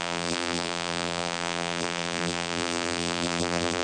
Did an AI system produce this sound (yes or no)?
yes